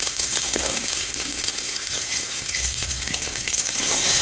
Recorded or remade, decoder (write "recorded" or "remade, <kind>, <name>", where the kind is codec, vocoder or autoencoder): remade, codec, SNAC